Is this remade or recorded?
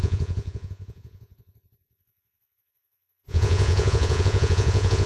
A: remade